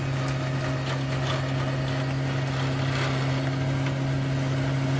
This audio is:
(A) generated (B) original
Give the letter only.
B